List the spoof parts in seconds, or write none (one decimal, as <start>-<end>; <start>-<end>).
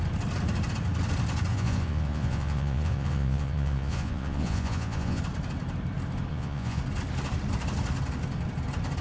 1.5-5.2; 6.3-6.8